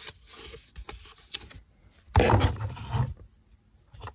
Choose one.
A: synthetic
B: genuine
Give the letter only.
B